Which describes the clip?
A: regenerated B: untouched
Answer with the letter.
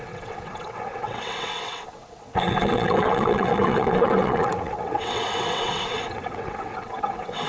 A